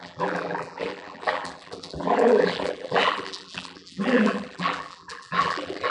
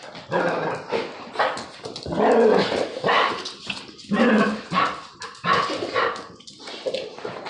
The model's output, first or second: first